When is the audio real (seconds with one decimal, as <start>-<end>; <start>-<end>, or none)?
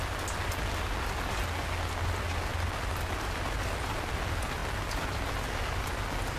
0.0-6.4